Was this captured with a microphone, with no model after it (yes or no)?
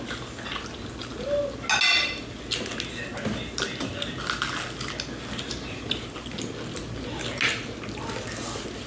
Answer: yes